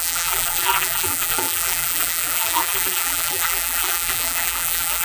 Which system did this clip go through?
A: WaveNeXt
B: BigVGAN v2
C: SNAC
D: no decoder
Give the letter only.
B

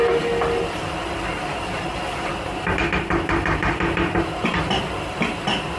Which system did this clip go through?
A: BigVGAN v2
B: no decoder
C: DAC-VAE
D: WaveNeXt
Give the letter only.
A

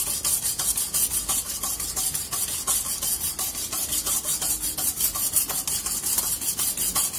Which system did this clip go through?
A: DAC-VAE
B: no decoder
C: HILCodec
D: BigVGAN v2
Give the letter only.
B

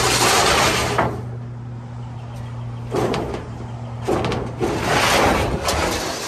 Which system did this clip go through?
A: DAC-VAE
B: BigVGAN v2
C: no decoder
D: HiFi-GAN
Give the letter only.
C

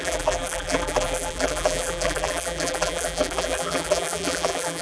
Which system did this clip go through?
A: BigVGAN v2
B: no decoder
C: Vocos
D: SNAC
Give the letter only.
A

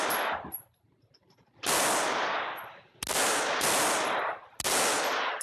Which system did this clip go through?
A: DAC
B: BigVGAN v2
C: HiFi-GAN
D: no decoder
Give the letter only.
D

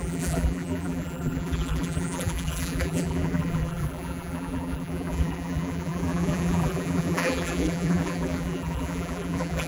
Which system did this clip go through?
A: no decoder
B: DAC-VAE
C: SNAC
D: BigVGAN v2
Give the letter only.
D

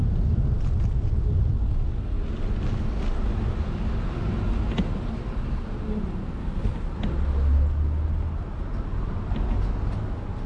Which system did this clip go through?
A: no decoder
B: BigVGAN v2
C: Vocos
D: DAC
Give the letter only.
A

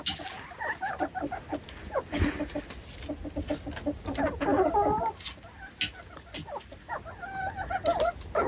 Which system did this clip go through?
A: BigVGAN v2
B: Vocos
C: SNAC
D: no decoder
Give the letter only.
D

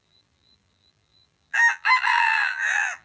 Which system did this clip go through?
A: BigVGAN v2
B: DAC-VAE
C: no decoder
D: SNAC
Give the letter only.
A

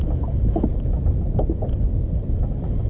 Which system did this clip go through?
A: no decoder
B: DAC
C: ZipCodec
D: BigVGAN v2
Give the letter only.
A